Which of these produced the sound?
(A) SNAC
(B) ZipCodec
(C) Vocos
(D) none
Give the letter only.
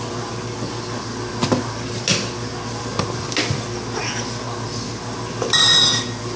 D